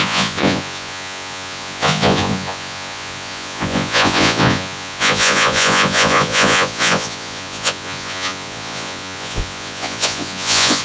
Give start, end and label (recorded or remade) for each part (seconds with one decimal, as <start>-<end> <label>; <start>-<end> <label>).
0.0-10.8 remade